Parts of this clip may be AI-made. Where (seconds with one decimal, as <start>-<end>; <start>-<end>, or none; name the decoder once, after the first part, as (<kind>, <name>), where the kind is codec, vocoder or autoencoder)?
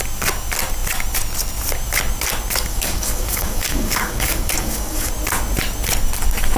2.7-5.1 (codec, DAC)